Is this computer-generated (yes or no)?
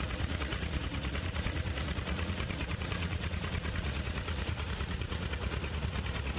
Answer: yes